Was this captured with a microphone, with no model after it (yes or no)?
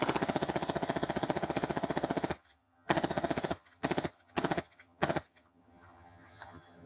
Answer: no